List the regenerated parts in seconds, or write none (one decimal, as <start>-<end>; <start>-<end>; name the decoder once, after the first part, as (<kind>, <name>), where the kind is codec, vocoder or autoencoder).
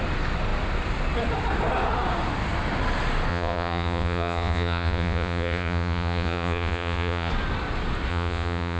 3.3-7.3 (vocoder, Vocos); 8.1-8.8